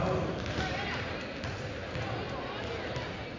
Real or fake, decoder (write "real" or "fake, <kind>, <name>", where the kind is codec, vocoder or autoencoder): real